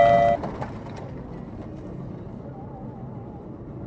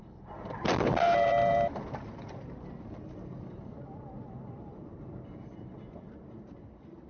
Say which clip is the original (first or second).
first